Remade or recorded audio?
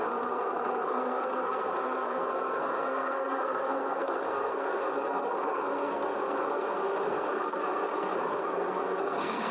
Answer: remade